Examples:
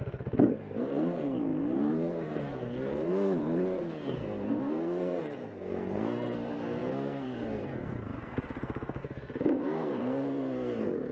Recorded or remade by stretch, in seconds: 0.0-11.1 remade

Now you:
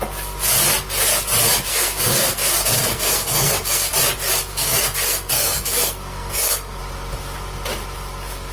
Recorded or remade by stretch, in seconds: 0.0-1.7 recorded; 1.7-3.9 remade; 3.9-4.5 recorded; 4.5-6.8 remade; 6.8-8.5 recorded

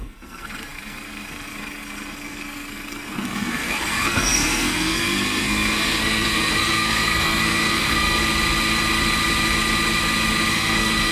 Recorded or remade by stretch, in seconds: 0.0-8.2 remade; 8.2-10.5 recorded; 10.5-11.1 remade